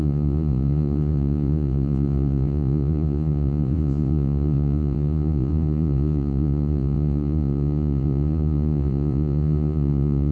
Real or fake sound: fake